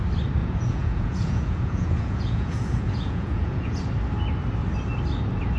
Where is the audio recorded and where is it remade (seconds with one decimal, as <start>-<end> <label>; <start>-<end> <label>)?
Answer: 0.0-0.4 recorded; 0.4-3.8 remade; 3.8-5.6 recorded